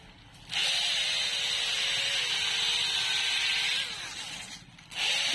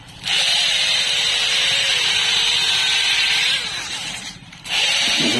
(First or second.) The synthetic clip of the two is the second